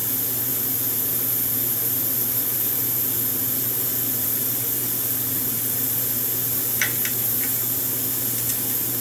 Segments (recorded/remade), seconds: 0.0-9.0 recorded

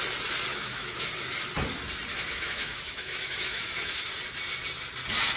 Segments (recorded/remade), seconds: 0.0-0.5 recorded; 0.5-1.1 remade; 1.1-2.1 recorded; 2.1-4.1 remade; 4.1-5.4 recorded